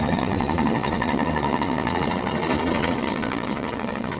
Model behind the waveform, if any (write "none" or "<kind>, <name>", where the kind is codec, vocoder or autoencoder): vocoder, Vocos